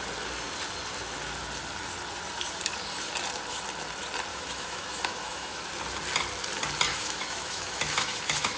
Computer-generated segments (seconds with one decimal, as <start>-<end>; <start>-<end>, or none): 4.3-5.7; 6.9-8.6